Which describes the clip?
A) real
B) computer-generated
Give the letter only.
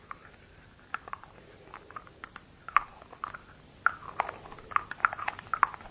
A